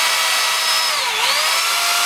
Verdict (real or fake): real